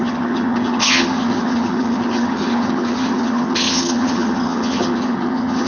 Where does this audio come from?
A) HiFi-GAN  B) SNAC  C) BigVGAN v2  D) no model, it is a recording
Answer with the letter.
A